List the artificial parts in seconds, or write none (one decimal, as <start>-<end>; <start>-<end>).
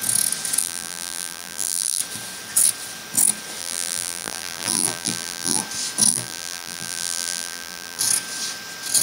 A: 0.6-2.0; 3.6-5.6; 6.1-8.0